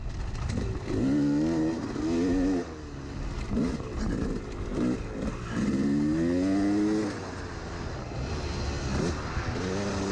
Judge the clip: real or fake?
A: real